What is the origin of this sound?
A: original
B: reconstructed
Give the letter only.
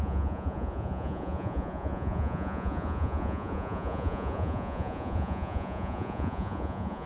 B